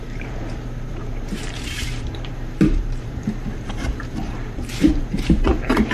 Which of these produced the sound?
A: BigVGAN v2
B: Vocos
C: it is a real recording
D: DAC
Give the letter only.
A